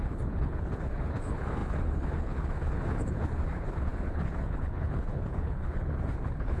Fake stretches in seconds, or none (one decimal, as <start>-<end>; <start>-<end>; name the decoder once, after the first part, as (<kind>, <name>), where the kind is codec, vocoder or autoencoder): 0.0-6.6 (codec, HILCodec)